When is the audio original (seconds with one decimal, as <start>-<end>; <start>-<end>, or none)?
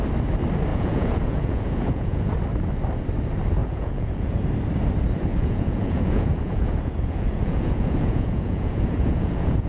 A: 0.0-0.7; 2.3-3.6; 4.4-5.3